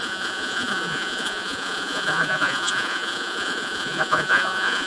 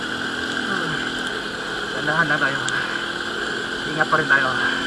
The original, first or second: second